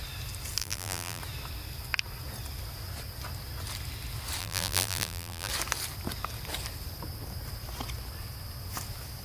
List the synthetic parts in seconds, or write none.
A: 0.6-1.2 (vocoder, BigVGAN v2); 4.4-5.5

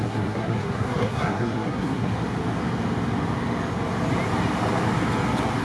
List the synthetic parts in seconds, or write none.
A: 0.0-2.1 (codec, SNAC)

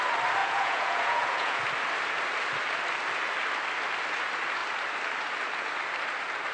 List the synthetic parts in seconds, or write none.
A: 0.4-1.6 (vocoder, Vocos)